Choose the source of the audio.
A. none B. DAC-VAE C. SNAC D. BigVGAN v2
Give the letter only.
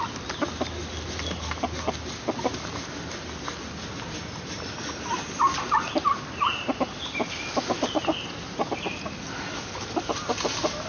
A